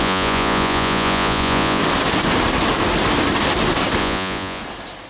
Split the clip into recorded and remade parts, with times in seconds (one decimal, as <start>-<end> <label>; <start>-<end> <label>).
0.0-1.8 remade; 1.8-4.0 recorded; 4.0-4.6 remade; 4.6-5.1 recorded